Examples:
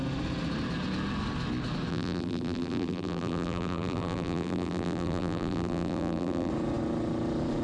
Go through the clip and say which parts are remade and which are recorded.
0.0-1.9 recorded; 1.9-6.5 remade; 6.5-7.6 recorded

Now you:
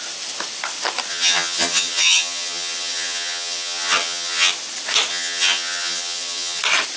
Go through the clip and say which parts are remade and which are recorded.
0.0-1.1 recorded; 1.1-4.5 remade; 4.5-5.1 recorded; 5.1-6.6 remade; 6.6-7.0 recorded

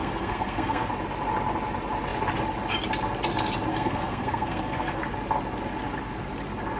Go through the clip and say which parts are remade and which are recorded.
0.0-0.9 remade; 0.9-3.7 recorded; 3.7-5.0 remade; 5.0-6.8 recorded

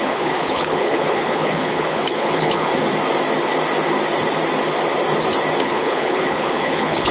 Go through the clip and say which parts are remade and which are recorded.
0.0-2.7 remade; 2.7-5.6 recorded; 5.6-7.1 remade

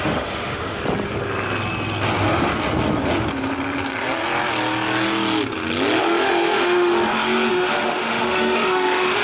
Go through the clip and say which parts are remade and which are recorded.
0.0-0.8 remade; 0.8-6.0 recorded; 6.0-6.9 remade; 6.9-7.5 recorded; 7.5-9.2 remade